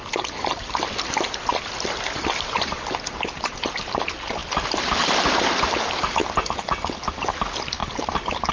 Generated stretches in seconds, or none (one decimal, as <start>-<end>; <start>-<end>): none